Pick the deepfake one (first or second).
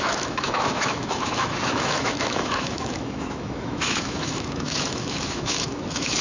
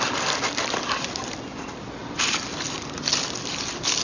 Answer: first